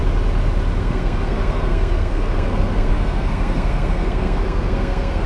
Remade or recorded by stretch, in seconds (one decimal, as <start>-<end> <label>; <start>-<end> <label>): 0.0-0.8 recorded; 0.8-5.3 remade